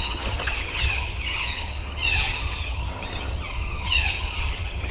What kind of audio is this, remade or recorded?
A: remade